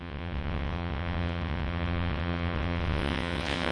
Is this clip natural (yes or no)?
no